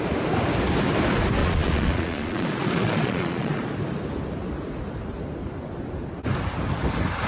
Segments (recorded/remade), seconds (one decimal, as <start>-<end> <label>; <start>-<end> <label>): 0.0-1.4 recorded; 1.4-3.6 remade; 3.6-7.3 recorded